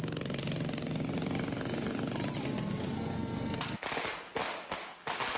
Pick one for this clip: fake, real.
real